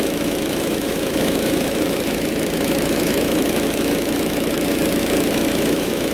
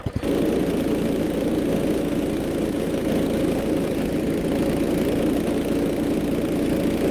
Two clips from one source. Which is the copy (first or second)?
first